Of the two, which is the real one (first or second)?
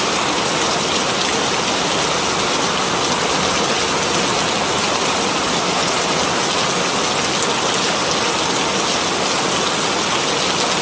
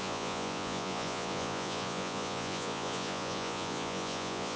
first